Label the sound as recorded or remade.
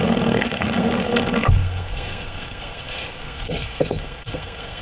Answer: remade